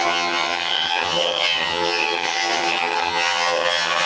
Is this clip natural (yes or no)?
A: no